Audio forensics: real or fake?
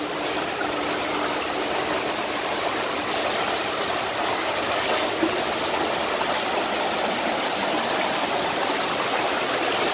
real